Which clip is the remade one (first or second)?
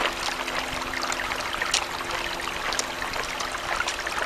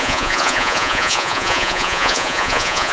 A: second